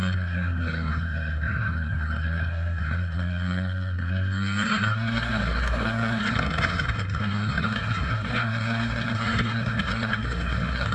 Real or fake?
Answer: fake